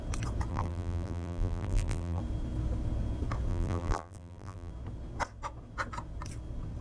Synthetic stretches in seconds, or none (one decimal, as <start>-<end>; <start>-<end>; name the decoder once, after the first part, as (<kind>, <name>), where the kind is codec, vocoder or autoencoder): 0.5-2.2 (vocoder, BigVGAN v2); 3.5-4.7

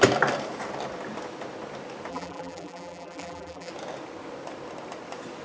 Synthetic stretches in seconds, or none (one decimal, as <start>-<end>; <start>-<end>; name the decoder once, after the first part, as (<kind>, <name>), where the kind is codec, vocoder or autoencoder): 2.1-3.7 (vocoder, BigVGAN v2)

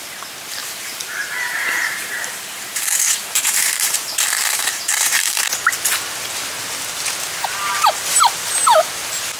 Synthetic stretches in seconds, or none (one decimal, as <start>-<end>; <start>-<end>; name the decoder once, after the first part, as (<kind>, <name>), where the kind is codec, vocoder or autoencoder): 0.6-5.4 (vocoder, BigVGAN v2)

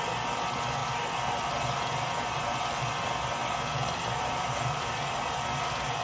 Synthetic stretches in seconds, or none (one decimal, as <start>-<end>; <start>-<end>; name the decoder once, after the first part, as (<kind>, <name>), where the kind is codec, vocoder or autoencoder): 0.8-2.8 (vocoder, BigVGAN v2); 3.4-4.9

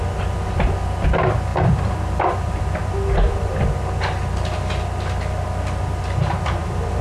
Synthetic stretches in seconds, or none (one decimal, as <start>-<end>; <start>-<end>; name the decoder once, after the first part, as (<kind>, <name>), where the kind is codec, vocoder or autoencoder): 1.5-3.5 (vocoder, BigVGAN v2); 6.3-7.0

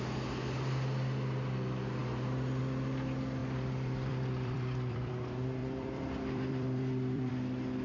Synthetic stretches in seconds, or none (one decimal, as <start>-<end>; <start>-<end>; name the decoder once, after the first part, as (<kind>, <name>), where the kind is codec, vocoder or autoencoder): 3.4-5.1 (vocoder, BigVGAN v2); 5.6-7.3

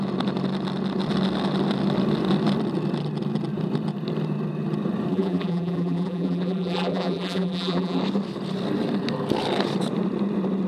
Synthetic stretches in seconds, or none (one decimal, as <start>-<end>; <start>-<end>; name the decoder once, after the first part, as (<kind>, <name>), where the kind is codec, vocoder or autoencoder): 5.1-8.0 (vocoder, BigVGAN v2)

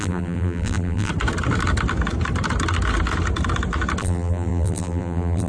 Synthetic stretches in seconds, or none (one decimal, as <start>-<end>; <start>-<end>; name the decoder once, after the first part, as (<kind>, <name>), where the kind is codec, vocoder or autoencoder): 0.0-1.1 (vocoder, BigVGAN v2); 4.0-5.5